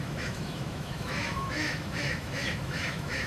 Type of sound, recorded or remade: remade